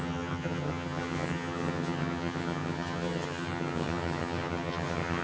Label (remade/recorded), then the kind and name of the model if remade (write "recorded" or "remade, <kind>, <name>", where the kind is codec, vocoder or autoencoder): remade, vocoder, HiFi-GAN